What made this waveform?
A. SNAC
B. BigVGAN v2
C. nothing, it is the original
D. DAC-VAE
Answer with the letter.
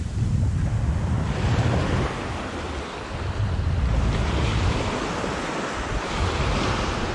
C